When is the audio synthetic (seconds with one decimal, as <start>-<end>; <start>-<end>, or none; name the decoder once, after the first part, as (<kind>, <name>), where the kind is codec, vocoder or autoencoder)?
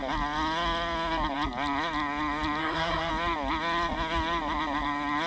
2.6-3.1 (codec, SNAC)